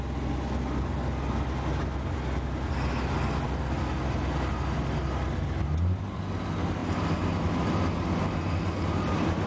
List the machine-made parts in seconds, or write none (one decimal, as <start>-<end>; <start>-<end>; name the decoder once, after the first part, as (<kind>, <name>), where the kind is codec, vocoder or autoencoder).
none